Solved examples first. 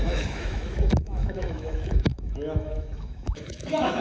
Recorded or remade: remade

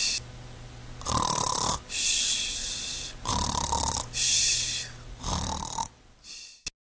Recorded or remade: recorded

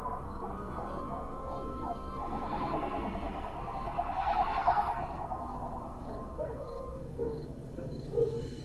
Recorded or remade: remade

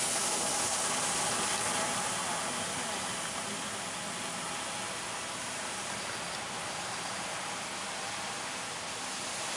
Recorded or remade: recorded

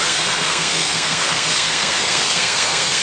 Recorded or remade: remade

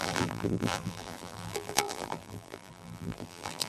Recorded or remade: remade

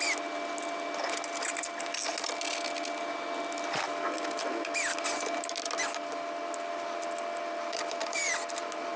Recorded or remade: recorded